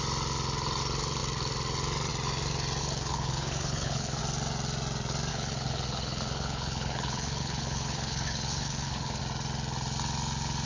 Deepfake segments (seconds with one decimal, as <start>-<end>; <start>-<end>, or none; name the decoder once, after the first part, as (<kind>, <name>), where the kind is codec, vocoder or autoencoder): 2.8-4.2 (codec, HILCodec); 5.3-9.2